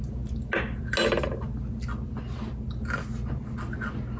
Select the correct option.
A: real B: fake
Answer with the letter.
A